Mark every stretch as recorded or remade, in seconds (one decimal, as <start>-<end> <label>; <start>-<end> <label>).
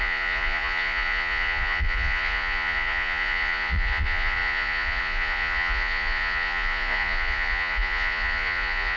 0.0-9.0 remade